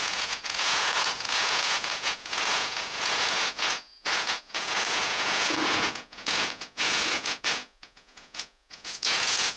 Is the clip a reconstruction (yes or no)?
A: yes